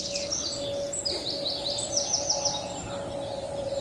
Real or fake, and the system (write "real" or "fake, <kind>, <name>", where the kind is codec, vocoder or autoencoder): real